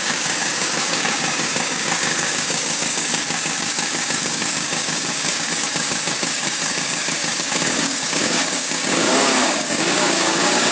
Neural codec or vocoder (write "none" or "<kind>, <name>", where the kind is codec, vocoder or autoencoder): codec, DAC